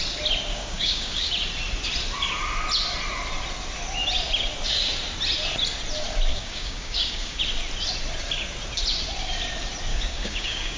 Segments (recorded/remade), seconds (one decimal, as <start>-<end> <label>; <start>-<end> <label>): 0.0-0.5 recorded; 0.5-1.3 remade; 1.3-6.3 recorded; 6.3-7.4 remade; 7.4-9.9 recorded; 9.9-10.8 remade